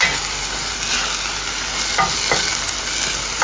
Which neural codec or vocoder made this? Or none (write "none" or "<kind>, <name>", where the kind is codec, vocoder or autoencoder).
none